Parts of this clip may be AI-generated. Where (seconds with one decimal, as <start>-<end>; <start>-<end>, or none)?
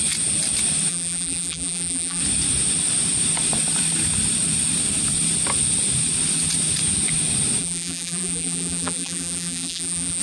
0.9-2.2; 7.6-10.2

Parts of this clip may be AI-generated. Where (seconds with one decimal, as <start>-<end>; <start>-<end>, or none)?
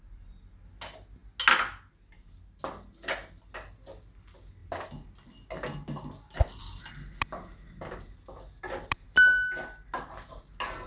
none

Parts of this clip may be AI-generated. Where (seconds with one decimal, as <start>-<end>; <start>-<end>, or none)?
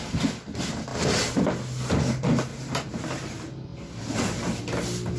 0.9-1.5; 2.5-3.0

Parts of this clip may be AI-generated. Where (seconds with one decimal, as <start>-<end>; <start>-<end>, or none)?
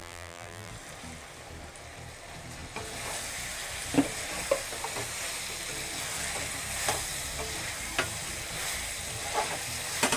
0.0-0.7